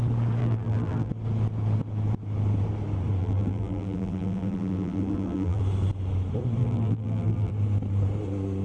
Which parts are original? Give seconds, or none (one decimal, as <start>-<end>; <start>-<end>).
0.0-0.4; 1.1-3.2; 5.6-6.6; 7.5-8.6